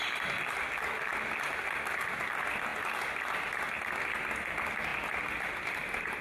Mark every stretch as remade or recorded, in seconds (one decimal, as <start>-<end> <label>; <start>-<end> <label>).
0.0-6.2 recorded